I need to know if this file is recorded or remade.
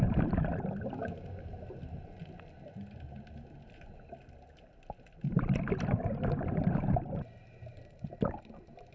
recorded